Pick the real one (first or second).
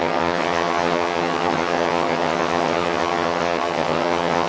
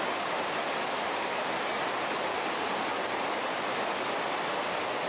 second